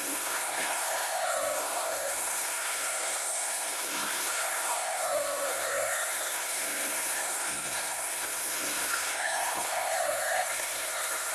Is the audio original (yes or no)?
no